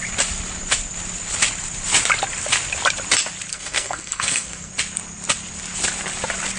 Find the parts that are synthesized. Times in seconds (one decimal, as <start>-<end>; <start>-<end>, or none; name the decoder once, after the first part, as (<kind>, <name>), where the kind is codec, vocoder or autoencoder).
3.5-4.7 (codec, SNAC)